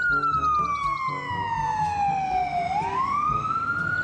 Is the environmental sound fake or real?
real